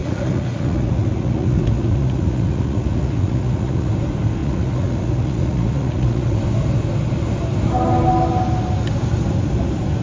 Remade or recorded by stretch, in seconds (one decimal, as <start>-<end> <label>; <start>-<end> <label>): 0.0-3.9 remade; 3.9-4.4 recorded; 4.4-6.4 remade; 6.4-10.0 recorded